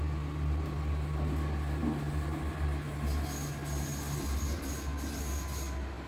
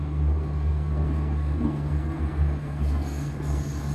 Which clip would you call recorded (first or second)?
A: first